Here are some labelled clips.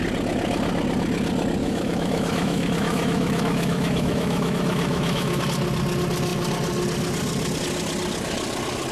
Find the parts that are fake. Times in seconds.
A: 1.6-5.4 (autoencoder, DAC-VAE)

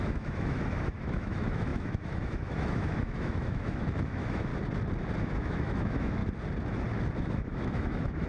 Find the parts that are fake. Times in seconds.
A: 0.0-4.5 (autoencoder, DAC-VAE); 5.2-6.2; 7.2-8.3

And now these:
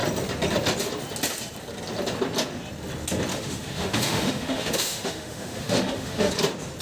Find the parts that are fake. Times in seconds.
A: 3.3-6.3 (autoencoder, DAC-VAE)

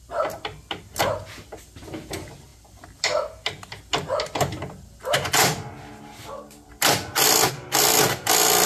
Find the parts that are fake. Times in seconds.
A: none

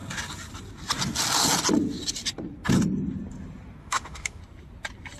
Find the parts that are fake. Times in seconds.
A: 3.8-4.4 (autoencoder, DAC-VAE)

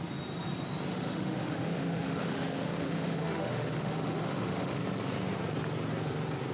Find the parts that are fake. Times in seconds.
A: 0.9-4.8 (autoencoder, DAC-VAE)

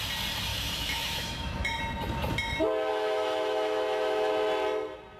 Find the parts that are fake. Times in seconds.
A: 0.5-1.8 (autoencoder, DAC-VAE); 2.9-4.3